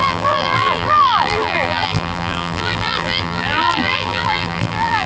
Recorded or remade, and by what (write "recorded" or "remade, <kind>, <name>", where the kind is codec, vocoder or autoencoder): remade, vocoder, BigVGAN v2